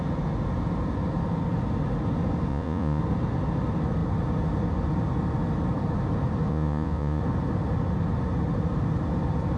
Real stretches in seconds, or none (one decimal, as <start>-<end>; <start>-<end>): 0.0-2.5; 3.0-6.5; 7.2-9.6

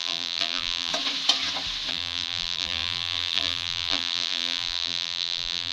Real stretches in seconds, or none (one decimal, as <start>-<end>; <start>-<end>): 0.9-1.9

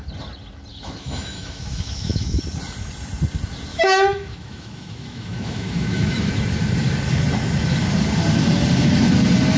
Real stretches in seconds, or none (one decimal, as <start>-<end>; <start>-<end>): 0.0-0.7; 2.4-3.7; 6.3-9.6